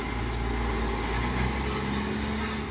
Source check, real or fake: real